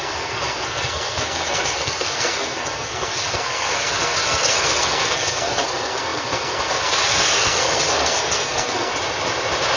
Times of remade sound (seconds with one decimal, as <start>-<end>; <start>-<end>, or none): 0.0-8.9